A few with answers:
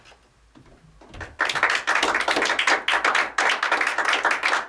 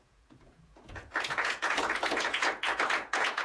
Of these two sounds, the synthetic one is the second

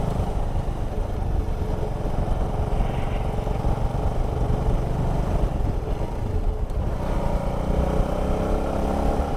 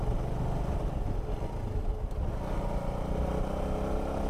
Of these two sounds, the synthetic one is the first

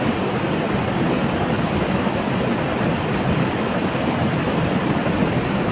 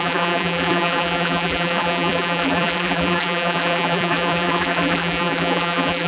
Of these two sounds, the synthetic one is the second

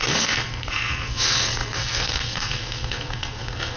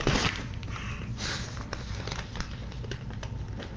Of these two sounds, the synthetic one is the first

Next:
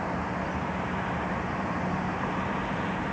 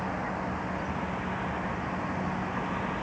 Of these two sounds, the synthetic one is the first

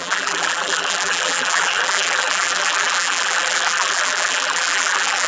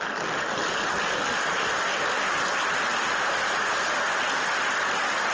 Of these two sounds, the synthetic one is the first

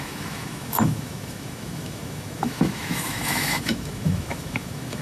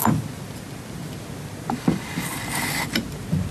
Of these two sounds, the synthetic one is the first